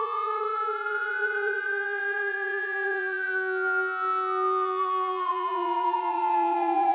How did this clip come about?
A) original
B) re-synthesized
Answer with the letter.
B